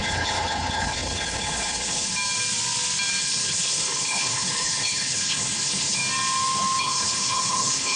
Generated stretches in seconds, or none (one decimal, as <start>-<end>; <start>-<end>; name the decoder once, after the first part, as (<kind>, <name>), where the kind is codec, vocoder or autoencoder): 0.0-2.1 (codec, HILCodec); 3.2-6.0; 6.8-8.0